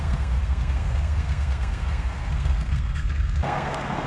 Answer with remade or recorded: remade